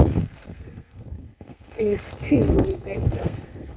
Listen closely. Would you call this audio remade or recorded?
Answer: remade